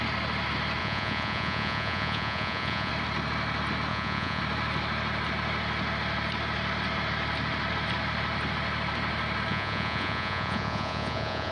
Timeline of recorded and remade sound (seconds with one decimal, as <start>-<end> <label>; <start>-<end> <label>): 0.0-0.8 recorded; 0.8-2.9 remade; 2.9-3.9 recorded; 3.9-4.4 remade; 4.4-9.5 recorded; 9.5-11.5 remade